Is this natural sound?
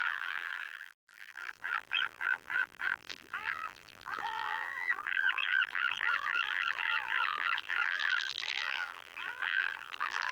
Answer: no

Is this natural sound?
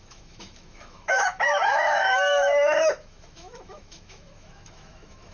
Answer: no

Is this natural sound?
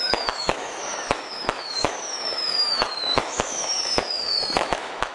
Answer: no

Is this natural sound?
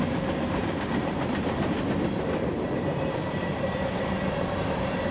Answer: yes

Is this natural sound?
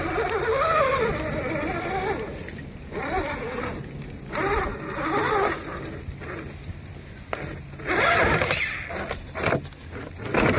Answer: yes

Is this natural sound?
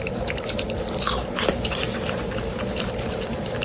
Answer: no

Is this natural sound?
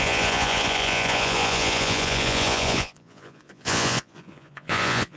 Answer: no